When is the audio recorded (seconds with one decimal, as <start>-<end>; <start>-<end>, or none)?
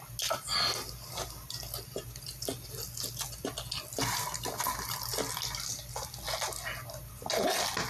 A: 0.0-7.9